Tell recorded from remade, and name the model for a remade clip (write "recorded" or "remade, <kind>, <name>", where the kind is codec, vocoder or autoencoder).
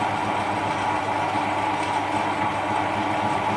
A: recorded